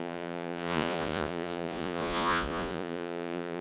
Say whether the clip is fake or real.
fake